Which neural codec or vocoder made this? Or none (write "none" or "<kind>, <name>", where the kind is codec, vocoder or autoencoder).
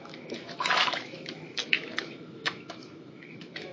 autoencoder, DAC-VAE